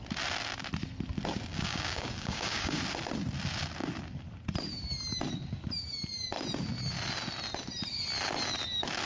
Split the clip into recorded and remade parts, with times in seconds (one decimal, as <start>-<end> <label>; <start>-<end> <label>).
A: 0.0-1.5 recorded; 1.5-2.8 remade; 2.8-9.1 recorded